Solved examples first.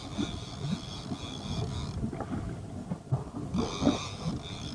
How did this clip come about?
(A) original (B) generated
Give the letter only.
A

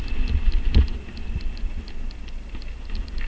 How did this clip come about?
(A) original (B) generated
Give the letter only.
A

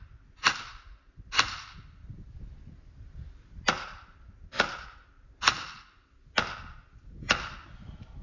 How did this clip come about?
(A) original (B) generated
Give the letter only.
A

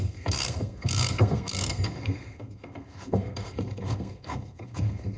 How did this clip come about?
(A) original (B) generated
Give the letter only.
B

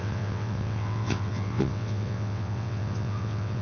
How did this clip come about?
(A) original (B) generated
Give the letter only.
B